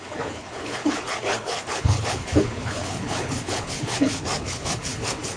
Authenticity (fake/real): fake